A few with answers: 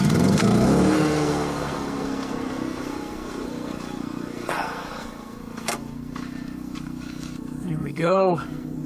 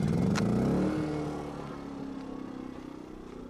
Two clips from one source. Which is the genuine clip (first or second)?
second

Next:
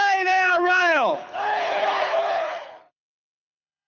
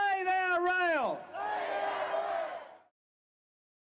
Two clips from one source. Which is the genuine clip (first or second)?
second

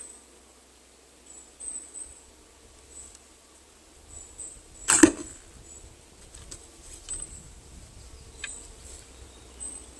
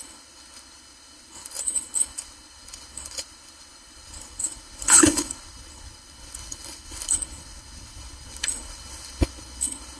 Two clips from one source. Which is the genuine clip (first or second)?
first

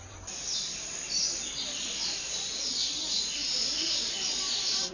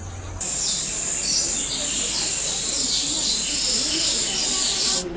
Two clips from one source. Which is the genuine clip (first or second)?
second